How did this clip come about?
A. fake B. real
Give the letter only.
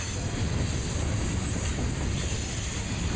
B